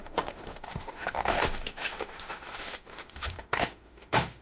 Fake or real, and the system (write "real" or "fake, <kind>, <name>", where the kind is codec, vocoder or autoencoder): fake, autoencoder, DAC-VAE